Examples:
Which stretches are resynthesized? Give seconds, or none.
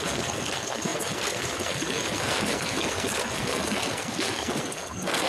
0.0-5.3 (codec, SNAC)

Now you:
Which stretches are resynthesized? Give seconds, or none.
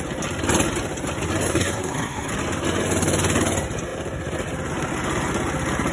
1.5-2.3 (codec, SNAC)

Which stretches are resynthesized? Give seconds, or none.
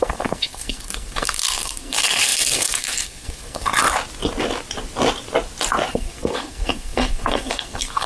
0.0-3.7 (codec, SNAC); 5.9-8.1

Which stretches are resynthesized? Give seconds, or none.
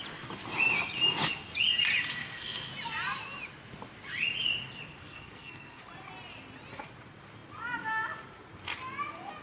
2.2-2.7 (codec, SNAC); 5.0-5.8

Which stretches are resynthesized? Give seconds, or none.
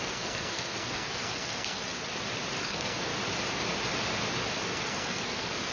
0.0-1.9 (codec, SNAC); 2.6-3.1; 4.6-5.7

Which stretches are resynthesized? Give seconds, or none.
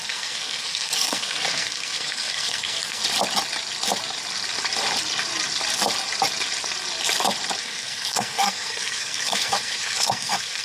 0.0-3.0 (codec, SNAC); 7.6-10.6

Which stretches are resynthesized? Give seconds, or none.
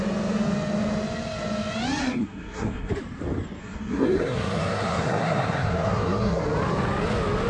2.0-2.9 (codec, SNAC); 3.6-6.4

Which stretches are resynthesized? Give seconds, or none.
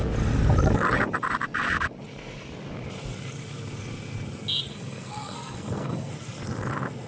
4.7-6.1 (codec, SNAC)